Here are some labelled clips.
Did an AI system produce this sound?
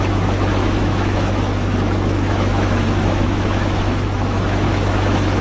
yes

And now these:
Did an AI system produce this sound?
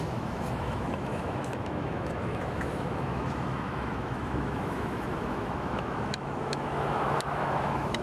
yes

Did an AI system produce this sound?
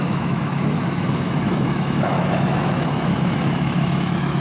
yes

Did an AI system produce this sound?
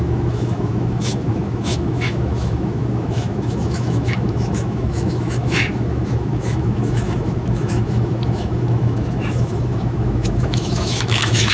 yes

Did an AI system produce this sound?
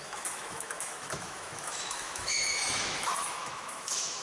yes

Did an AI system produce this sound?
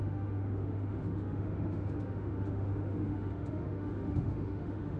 yes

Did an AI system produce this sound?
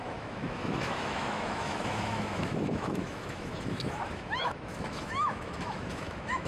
yes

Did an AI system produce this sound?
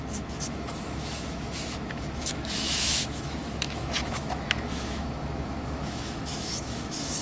yes